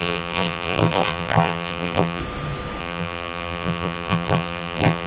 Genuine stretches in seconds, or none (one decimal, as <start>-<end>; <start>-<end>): 2.2-2.8